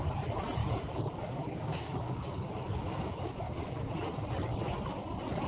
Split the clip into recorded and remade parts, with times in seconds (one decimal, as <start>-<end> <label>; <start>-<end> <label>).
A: 0.0-0.6 recorded; 0.6-3.9 remade; 3.9-5.5 recorded